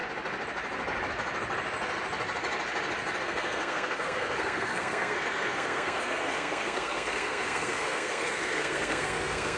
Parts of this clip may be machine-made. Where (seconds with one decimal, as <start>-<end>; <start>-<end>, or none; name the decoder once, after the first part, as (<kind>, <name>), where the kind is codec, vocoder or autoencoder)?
3.2-9.6 (codec, SNAC)